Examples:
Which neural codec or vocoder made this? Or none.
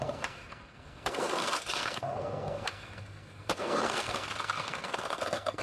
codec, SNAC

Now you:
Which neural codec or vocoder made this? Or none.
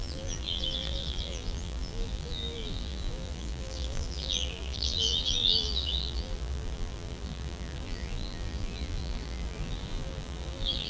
vocoder, BigVGAN v2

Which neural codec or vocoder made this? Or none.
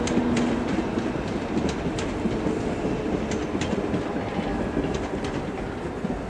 none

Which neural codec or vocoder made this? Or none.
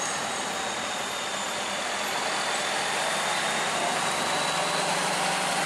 none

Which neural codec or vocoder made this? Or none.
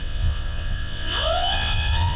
vocoder, WaveNeXt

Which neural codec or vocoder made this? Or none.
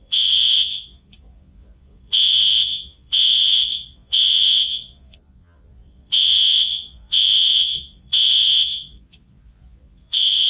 vocoder, Vocos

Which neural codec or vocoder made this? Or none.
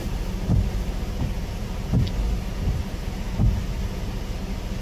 none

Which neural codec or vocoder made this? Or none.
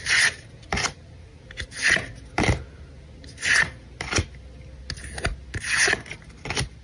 none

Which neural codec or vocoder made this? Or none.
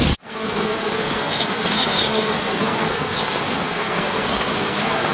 codec, SNAC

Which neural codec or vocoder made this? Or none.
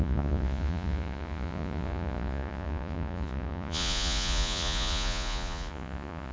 vocoder, Vocos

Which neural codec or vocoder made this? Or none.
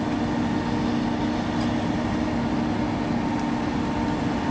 none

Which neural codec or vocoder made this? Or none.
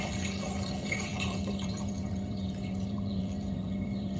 vocoder, HiFi-GAN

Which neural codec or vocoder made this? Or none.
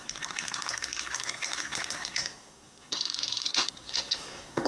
codec, SNAC